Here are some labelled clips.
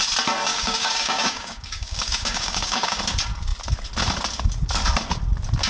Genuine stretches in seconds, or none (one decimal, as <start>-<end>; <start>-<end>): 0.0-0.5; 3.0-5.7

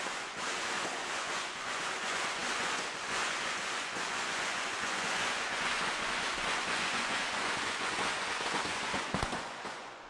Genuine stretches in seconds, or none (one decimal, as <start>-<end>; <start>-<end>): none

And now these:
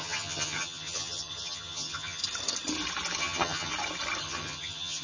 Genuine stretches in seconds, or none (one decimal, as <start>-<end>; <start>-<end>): 2.2-3.2; 3.7-4.2